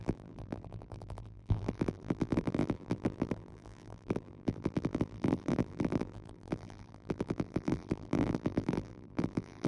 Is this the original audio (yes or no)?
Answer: no